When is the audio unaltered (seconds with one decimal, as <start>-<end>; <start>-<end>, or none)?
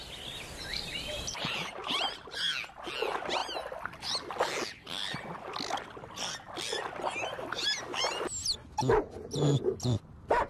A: 0.0-0.7; 2.5-10.5